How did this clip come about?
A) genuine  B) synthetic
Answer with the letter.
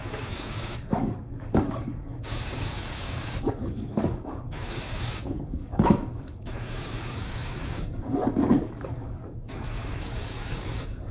B